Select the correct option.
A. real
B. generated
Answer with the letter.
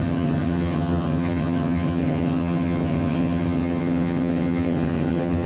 B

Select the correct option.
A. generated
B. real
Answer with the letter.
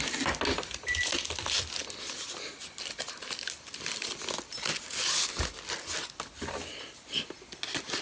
B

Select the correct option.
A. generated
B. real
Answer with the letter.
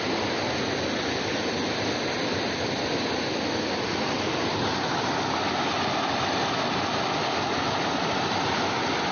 B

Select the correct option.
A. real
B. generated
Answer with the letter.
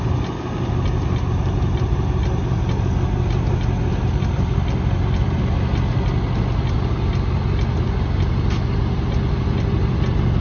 A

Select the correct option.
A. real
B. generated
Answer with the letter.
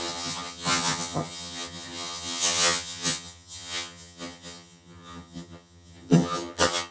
B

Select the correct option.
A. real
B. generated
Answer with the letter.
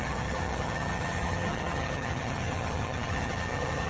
B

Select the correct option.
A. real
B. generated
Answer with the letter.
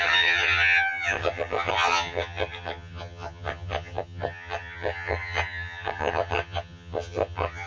B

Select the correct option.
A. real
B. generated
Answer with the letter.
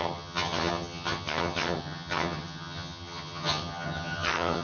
B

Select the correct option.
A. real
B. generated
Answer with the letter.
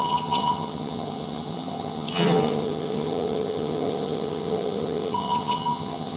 B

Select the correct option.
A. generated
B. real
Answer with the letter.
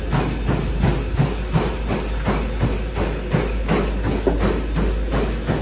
B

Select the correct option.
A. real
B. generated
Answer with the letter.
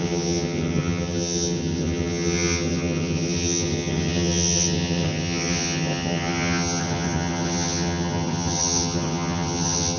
B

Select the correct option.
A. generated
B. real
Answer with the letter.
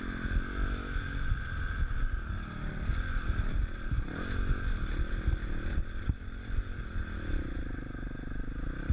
B